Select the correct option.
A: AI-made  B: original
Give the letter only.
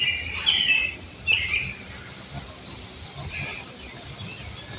B